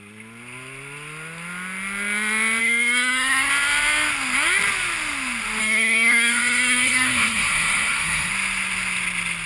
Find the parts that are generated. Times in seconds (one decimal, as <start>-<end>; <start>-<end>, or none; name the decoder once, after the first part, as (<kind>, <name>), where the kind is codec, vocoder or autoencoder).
2.6-3.5 (codec, SNAC); 5.6-8.3